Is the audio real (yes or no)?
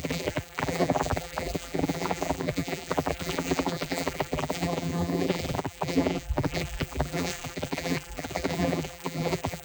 no